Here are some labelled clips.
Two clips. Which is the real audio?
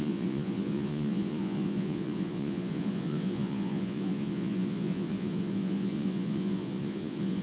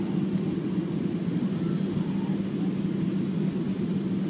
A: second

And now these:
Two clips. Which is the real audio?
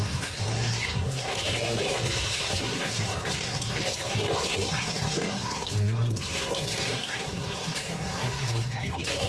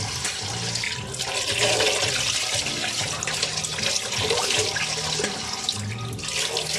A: second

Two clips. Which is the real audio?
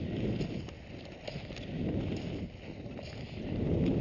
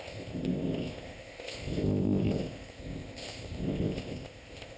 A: first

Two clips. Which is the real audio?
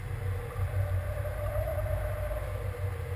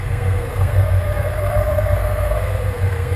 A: first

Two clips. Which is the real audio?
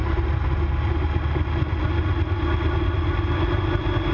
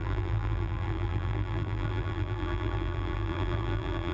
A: first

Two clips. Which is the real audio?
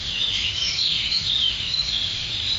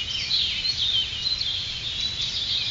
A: second